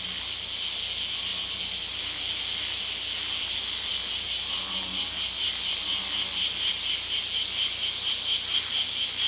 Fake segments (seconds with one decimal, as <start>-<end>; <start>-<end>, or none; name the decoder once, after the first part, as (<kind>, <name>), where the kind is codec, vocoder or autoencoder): none